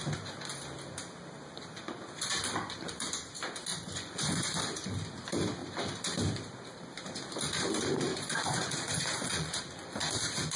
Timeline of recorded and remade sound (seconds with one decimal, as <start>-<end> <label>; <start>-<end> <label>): 0.0-3.7 recorded; 3.7-4.6 remade; 4.6-8.1 recorded; 8.1-9.6 remade; 9.6-10.6 recorded